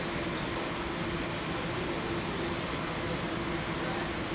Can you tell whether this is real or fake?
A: real